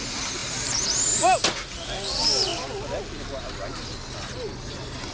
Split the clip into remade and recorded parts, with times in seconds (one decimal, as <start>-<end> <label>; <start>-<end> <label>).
0.0-5.1 recorded